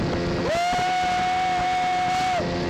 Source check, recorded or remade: recorded